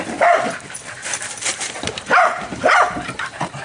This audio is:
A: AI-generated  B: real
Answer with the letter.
A